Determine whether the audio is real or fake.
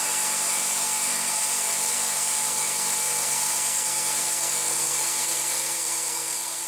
fake